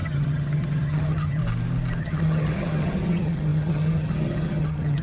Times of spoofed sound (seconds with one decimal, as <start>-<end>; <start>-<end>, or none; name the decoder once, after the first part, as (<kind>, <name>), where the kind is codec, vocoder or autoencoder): 0.0-1.4 (vocoder, HiFi-GAN); 2.0-5.0